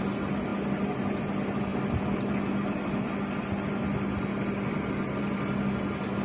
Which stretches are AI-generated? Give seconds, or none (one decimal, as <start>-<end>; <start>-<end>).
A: none